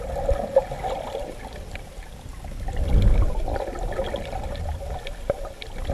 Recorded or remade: recorded